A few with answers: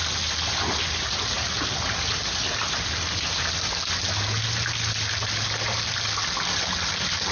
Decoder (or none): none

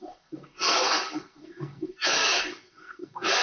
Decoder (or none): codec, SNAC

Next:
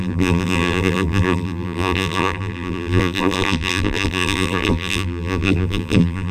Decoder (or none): vocoder, BigVGAN v2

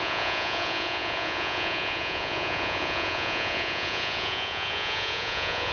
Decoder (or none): vocoder, Vocos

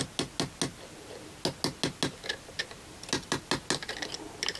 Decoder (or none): none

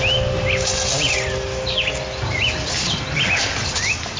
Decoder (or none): none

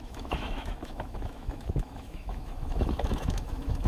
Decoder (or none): autoencoder, DAC-VAE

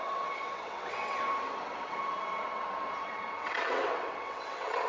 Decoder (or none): vocoder, WaveNeXt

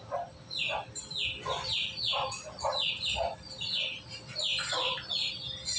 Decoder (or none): none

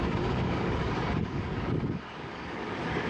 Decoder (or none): codec, DAC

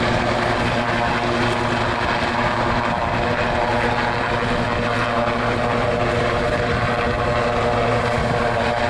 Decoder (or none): none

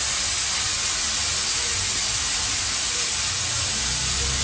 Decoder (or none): none